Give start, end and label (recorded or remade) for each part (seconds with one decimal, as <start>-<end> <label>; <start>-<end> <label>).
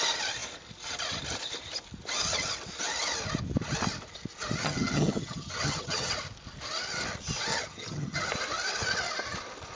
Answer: 0.0-4.6 recorded; 4.6-6.1 remade; 6.1-7.5 recorded; 7.5-8.2 remade; 8.2-9.8 recorded